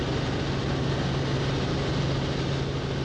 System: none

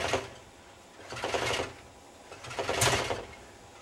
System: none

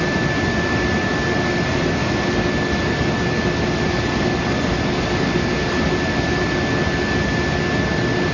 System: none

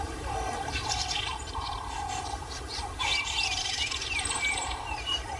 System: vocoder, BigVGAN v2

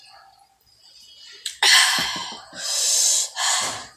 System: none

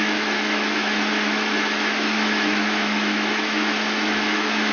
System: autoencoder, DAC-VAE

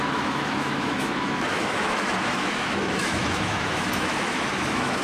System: autoencoder, DAC-VAE